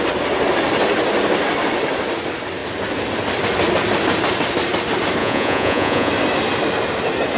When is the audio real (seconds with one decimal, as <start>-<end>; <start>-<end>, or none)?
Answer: 0.0-5.2; 6.1-7.4